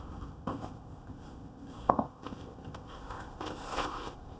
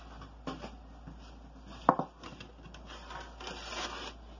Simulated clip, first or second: first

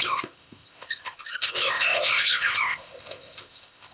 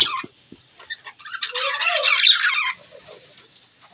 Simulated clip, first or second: first